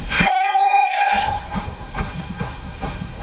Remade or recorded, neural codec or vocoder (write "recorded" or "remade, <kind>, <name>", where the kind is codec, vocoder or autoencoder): remade, codec, SNAC